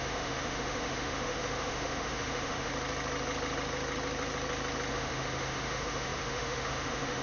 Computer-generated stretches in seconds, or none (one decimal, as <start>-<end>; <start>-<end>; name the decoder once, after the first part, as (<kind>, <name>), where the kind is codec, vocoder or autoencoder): 0.0-2.7 (autoencoder, DAC-VAE); 4.9-7.2